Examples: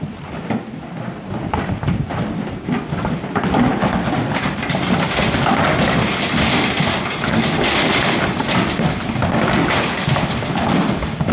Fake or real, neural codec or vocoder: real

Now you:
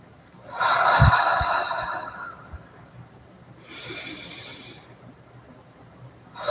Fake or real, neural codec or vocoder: fake, vocoder, BigVGAN v2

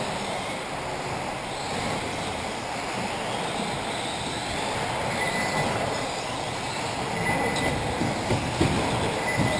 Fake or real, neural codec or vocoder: real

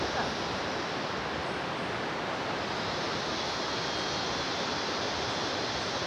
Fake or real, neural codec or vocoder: real